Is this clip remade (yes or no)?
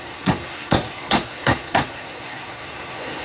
yes